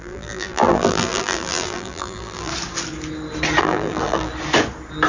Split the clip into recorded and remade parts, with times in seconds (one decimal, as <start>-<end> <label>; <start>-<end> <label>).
0.0-2.5 remade; 2.5-3.6 recorded; 3.6-4.3 remade; 4.3-5.1 recorded